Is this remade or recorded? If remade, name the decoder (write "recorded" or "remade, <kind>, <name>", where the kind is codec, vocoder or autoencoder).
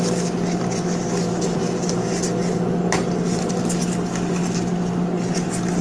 recorded